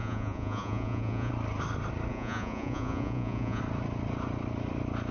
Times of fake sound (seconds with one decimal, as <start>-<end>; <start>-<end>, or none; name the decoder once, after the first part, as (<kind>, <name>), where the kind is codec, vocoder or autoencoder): 0.0-1.3 (vocoder, Vocos); 2.1-3.6